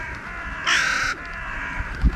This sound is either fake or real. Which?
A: real